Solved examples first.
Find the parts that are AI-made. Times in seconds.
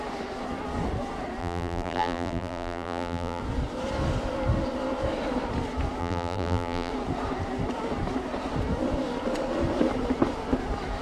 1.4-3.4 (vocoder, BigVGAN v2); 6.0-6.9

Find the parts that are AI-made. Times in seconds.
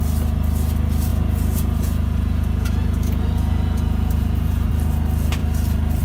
1.1-4.7 (vocoder, Vocos)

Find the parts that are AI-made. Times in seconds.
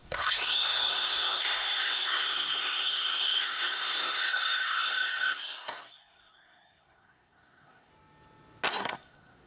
0.0-7.9 (codec, SNAC); 8.7-9.5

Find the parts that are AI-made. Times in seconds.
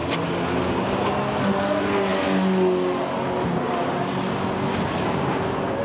none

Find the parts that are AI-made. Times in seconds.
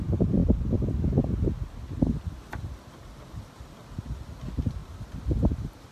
none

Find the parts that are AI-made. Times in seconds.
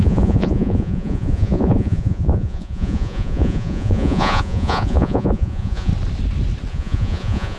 0.0-5.9 (vocoder, Vocos); 6.7-7.6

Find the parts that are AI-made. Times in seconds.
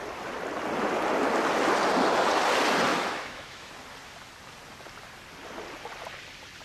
2.9-3.7 (autoencoder, DAC-VAE)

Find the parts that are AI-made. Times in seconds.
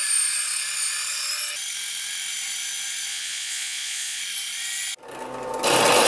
3.1-4.2 (vocoder, Vocos)